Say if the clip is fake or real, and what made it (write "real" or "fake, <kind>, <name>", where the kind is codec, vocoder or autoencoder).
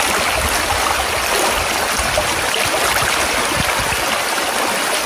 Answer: real